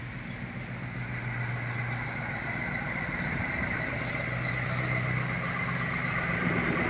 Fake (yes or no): no